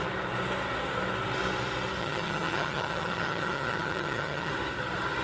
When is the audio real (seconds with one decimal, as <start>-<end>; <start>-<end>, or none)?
0.0-2.0; 4.5-5.2